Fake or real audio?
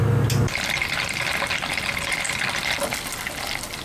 real